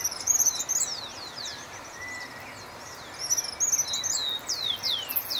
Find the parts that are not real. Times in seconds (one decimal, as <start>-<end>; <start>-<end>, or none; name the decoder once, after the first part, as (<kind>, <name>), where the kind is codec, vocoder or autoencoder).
0.0-0.6 (vocoder, BigVGAN v2); 1.5-3.1

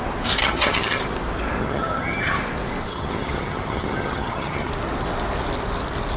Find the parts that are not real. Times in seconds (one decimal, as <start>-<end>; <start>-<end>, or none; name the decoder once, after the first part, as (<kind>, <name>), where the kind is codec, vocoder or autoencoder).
0.4-1.0 (vocoder, HiFi-GAN); 1.6-2.4; 2.9-4.7

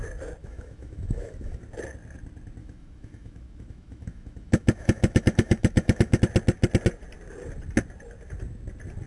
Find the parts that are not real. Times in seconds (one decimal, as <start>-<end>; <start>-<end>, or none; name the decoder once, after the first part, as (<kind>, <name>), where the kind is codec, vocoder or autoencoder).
0.4-1.6 (autoencoder, DAC-VAE); 2.6-6.2

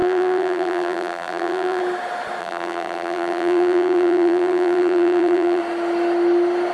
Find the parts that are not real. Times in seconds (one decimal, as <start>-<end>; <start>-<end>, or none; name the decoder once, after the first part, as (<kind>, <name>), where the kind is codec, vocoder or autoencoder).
0.0-1.8 (vocoder, BigVGAN v2); 2.4-5.6

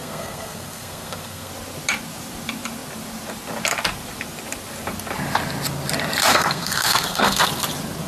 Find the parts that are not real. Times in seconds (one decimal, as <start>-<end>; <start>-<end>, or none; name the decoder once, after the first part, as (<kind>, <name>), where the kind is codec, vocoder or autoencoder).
0.0-1.5 (codec, SNAC); 6.3-7.5